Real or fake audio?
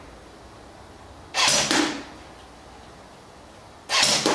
real